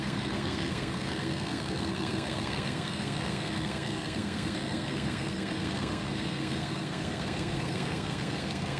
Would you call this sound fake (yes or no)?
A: yes